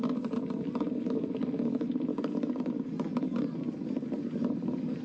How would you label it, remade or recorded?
remade